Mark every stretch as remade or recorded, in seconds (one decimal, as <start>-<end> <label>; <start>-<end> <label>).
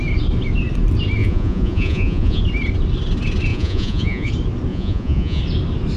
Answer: 0.0-1.2 recorded; 1.2-2.4 remade; 2.4-3.5 recorded; 3.5-4.3 remade; 4.3-4.7 recorded; 4.7-5.4 remade; 5.4-6.0 recorded